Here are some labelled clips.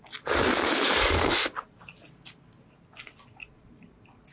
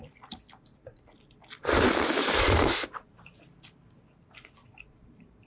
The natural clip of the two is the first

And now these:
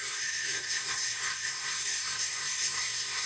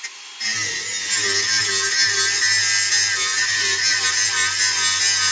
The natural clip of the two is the second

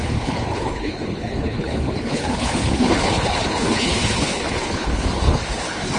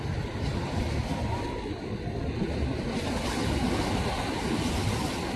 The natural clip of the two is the second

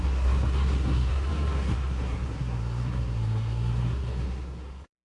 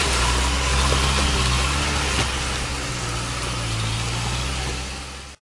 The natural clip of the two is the second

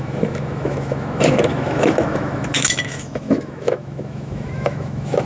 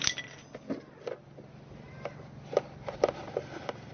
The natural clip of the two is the second